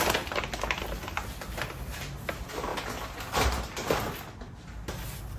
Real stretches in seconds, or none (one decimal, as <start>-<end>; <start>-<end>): 0.0-5.4